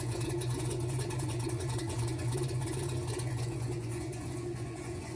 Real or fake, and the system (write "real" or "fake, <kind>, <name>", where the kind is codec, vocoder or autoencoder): fake, vocoder, Vocos